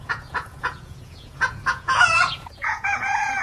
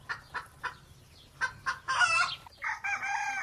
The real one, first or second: second